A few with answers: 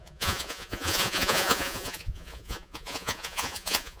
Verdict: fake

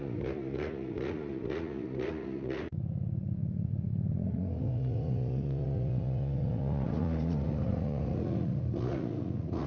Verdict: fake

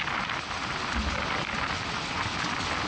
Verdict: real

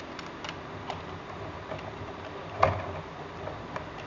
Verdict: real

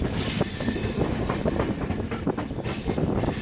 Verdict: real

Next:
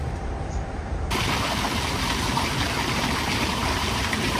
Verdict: fake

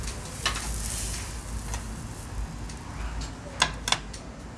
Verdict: real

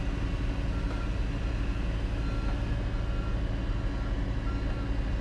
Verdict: real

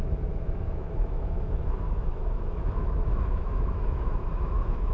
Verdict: fake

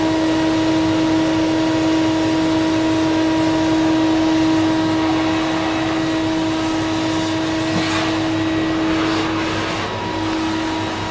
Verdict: real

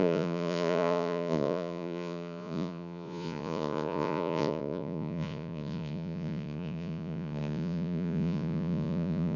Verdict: fake